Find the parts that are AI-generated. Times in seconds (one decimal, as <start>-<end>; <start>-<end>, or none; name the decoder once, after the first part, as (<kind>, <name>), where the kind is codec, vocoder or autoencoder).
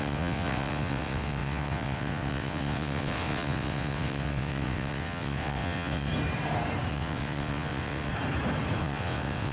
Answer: 0.0-6.1 (vocoder, WaveNeXt); 6.9-8.1; 8.8-9.5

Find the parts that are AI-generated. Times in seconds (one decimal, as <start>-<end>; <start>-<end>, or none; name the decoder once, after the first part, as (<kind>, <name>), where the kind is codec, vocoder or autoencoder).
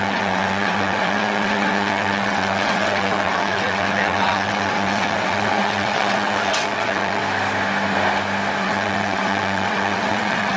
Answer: 0.0-7.2 (vocoder, WaveNeXt); 8.6-10.6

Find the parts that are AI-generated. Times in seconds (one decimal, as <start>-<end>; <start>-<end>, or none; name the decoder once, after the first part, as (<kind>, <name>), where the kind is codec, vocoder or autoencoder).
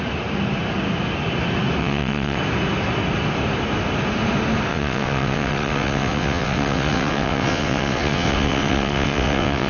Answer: 1.8-2.4 (vocoder, WaveNeXt); 4.7-9.7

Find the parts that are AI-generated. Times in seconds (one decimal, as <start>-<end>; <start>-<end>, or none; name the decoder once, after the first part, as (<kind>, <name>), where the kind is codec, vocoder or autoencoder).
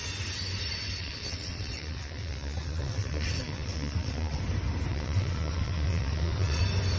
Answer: 1.0-4.4 (vocoder, WaveNeXt); 4.9-6.6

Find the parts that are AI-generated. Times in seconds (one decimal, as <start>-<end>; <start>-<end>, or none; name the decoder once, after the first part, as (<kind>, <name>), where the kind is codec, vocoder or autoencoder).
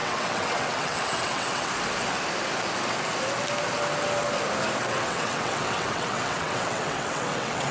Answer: 0.0-1.7 (vocoder, WaveNeXt); 4.8-7.7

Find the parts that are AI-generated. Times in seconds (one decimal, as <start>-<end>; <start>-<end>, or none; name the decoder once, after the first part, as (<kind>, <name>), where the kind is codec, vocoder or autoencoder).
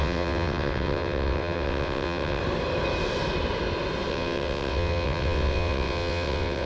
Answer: 0.0-2.4 (vocoder, WaveNeXt); 4.1-6.7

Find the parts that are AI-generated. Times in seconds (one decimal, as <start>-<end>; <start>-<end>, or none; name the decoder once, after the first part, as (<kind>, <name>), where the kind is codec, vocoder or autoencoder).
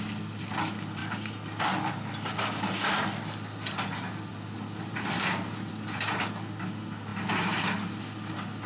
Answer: none